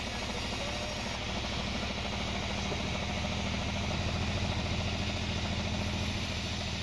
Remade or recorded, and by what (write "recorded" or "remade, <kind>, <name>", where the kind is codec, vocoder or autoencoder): recorded